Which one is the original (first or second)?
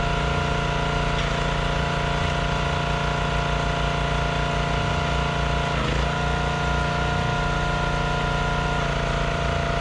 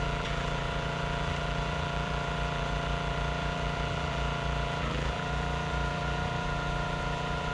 first